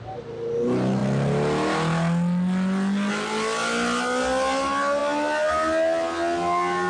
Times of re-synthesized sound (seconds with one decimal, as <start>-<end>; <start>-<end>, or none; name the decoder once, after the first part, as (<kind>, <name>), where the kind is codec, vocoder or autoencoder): none